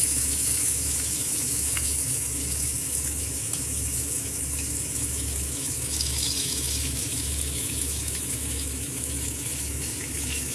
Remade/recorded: remade